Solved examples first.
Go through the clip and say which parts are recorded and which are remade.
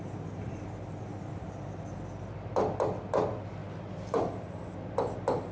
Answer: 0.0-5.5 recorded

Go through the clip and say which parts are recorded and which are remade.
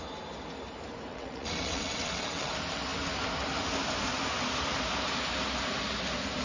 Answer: 0.0-1.1 recorded; 1.1-2.5 remade; 2.5-6.4 recorded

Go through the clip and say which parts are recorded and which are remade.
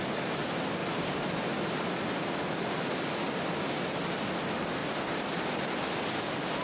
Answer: 0.0-0.8 recorded; 0.8-1.5 remade; 1.5-4.8 recorded; 4.8-5.3 remade; 5.3-6.6 recorded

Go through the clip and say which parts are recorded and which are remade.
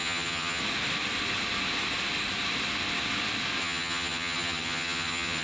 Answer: 0.0-0.6 remade; 0.6-3.6 recorded; 3.6-5.4 remade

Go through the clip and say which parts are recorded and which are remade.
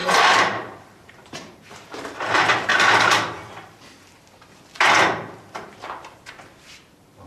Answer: 0.0-2.7 remade; 2.7-5.5 recorded; 5.5-7.3 remade